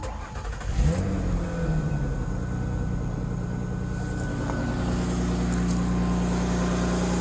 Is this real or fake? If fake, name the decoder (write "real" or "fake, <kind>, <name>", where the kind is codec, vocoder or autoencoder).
real